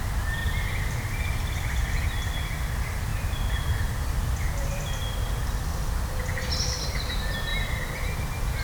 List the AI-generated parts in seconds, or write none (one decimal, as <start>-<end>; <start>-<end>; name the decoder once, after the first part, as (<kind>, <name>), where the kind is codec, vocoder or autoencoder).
0.4-1.5 (vocoder, BigVGAN v2)